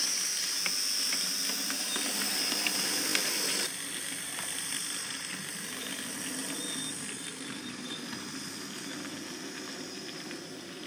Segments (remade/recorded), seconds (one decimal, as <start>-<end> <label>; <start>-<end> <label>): 0.0-10.9 recorded